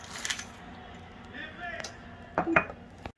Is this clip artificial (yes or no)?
no